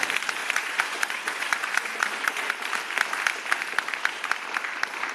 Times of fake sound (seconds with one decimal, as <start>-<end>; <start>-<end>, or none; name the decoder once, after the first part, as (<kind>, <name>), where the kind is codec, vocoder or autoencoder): 0.4-2.5 (vocoder, Vocos)